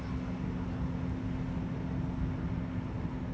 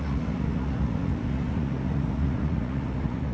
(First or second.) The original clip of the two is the first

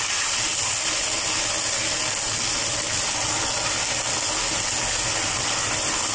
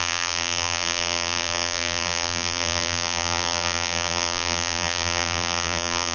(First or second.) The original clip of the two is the first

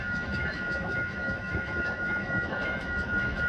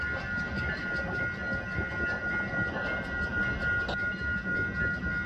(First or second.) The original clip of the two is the second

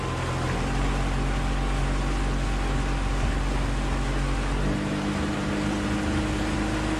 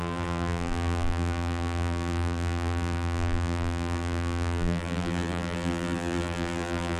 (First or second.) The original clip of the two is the first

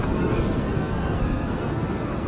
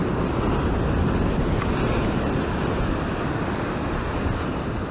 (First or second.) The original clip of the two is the second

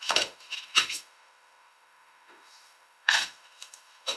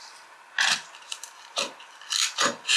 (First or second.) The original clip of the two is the second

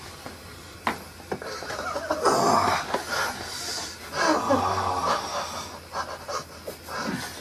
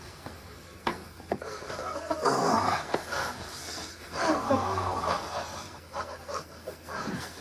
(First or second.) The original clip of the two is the first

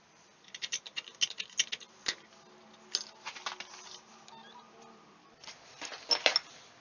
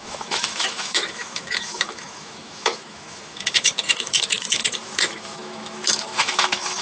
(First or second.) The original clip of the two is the first